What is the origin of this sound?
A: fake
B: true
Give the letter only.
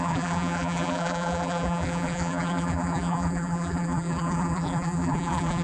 A